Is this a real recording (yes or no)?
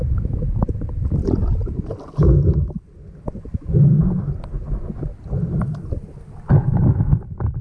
yes